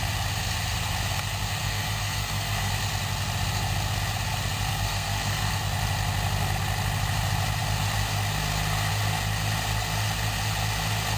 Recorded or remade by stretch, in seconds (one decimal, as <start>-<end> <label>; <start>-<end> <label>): 0.0-1.6 recorded; 1.6-2.7 remade; 2.7-4.7 recorded; 4.7-5.5 remade; 5.5-11.2 recorded